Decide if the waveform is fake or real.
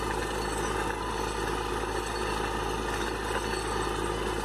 real